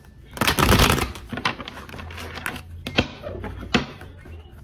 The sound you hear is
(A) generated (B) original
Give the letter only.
B